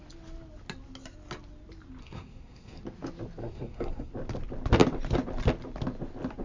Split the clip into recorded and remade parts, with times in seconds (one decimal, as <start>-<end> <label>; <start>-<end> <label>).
0.0-2.0 recorded; 2.0-2.8 remade; 2.8-3.4 recorded; 3.4-4.1 remade; 4.1-6.4 recorded